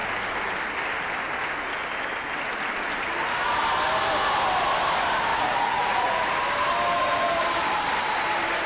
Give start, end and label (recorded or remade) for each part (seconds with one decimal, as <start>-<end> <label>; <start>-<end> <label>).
0.0-5.3 recorded; 5.3-6.4 remade; 6.4-8.7 recorded